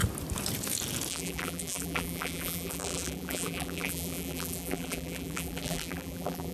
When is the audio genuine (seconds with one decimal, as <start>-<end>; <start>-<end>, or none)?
0.0-1.1